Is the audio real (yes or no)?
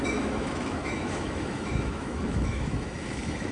no